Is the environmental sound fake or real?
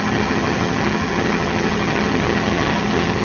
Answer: fake